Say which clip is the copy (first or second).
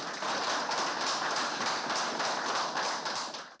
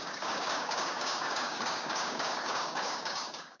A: second